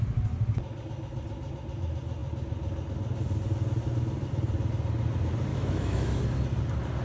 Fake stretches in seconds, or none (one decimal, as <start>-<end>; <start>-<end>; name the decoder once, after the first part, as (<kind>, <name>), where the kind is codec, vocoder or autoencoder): 5.5-6.2 (autoencoder, DAC-VAE)